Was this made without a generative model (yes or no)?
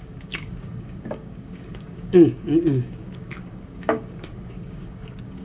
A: no